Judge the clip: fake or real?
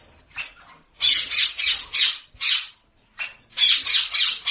real